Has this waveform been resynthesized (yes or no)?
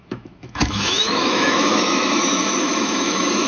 yes